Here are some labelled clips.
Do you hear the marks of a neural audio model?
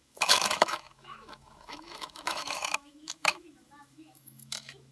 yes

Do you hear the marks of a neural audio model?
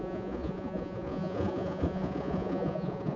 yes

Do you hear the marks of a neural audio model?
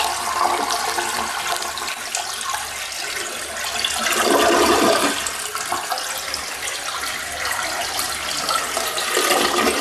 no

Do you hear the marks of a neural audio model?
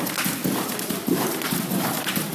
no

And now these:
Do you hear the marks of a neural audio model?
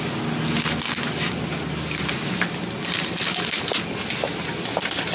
no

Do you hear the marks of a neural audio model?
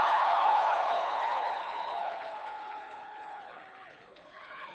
yes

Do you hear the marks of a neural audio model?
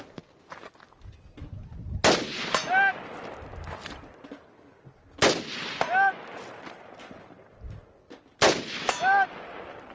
no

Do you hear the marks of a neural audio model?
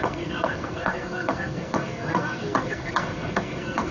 yes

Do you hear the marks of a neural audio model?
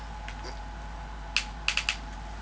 no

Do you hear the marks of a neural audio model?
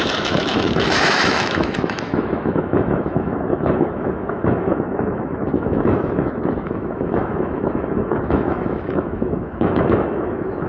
yes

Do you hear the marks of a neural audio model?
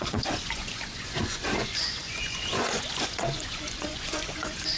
yes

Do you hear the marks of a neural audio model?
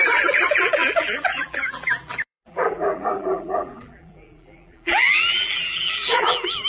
yes